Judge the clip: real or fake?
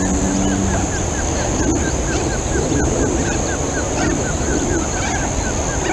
real